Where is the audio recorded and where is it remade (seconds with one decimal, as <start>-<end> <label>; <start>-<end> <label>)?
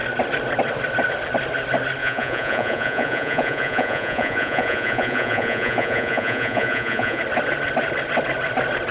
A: 0.0-2.0 recorded; 2.0-7.2 remade; 7.2-8.9 recorded